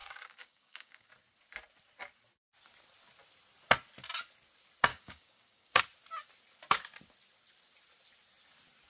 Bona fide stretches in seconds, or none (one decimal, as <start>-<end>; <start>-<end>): 1.1-4.9; 5.8-8.9